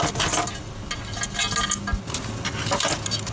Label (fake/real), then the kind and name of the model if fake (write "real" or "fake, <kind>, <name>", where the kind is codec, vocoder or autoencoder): real